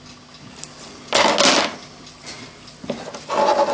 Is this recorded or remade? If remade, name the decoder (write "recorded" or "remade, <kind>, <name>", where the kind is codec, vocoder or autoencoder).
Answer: recorded